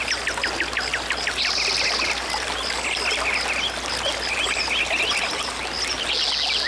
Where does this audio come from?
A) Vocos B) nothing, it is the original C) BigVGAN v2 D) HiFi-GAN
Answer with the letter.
B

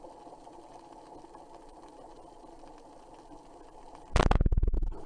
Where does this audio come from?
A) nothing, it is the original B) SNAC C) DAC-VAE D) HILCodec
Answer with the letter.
A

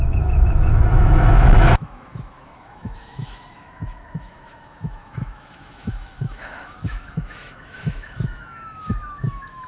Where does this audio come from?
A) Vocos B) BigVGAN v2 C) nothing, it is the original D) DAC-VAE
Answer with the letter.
D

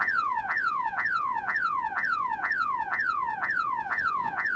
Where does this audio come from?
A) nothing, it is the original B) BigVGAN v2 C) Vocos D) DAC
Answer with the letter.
C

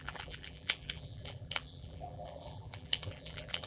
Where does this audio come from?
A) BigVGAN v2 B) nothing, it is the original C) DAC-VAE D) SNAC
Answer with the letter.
A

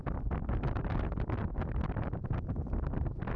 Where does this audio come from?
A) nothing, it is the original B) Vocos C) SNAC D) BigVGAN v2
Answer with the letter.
A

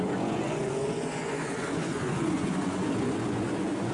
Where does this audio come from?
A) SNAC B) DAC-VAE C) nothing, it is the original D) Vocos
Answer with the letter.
D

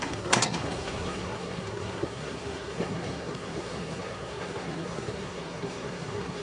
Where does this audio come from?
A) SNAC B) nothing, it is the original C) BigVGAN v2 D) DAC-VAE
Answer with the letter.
A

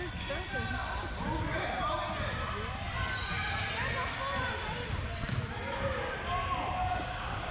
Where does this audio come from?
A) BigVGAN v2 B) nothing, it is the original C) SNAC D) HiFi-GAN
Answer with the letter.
B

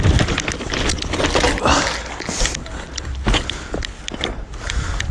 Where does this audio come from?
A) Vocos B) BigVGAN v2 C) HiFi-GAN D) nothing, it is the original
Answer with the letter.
D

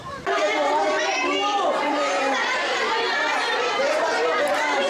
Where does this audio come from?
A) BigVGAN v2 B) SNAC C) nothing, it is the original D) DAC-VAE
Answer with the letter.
A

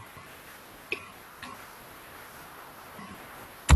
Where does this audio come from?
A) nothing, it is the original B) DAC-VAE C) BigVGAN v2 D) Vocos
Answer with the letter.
A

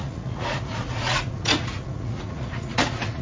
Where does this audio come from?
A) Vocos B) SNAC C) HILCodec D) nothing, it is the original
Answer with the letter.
A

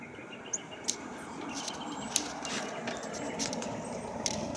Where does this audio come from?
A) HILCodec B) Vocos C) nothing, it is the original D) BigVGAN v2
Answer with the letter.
C